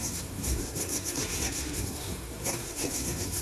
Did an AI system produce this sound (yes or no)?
yes